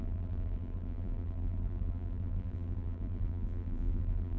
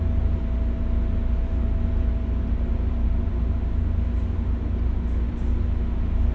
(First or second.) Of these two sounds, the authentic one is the second